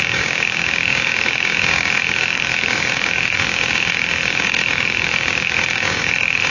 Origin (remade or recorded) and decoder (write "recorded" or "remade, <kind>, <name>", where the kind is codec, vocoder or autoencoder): remade, codec, DAC